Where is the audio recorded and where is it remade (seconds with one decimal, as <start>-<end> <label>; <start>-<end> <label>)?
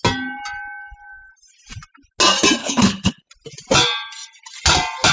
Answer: 0.0-2.6 recorded; 2.6-3.3 remade; 3.3-5.1 recorded